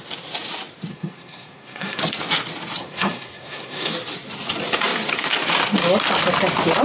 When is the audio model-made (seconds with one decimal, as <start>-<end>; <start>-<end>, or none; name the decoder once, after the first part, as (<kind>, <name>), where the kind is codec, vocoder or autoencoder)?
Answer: 0.9-2.0 (codec, SNAC); 2.8-3.9